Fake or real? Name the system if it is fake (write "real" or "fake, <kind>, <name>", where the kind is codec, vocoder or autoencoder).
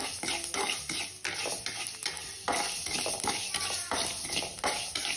real